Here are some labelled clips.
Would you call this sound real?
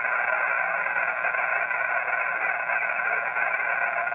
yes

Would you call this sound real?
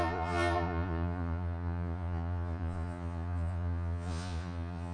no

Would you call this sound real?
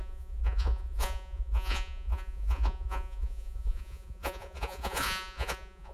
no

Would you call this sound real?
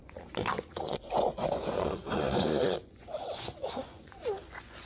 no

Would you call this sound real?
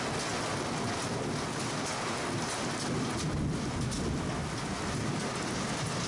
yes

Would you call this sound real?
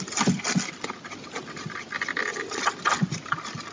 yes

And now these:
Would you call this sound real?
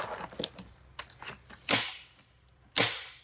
yes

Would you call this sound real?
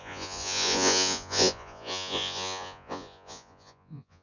no